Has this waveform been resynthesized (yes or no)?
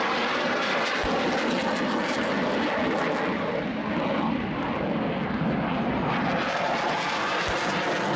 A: no